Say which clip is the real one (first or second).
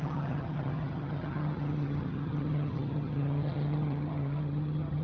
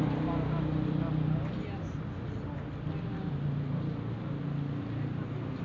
second